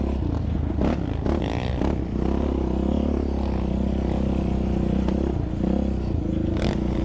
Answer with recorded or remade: recorded